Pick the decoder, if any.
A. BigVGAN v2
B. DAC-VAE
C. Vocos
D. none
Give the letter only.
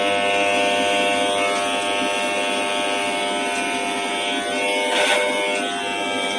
D